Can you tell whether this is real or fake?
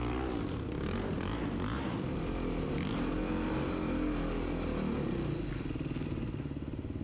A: real